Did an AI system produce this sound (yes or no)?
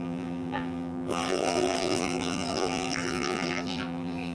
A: yes